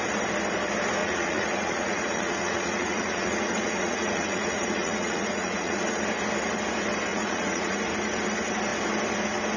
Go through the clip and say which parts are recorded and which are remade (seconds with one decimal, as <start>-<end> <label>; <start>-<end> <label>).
0.0-1.0 recorded; 1.0-6.0 remade; 6.0-7.1 recorded; 7.1-7.8 remade; 7.8-9.6 recorded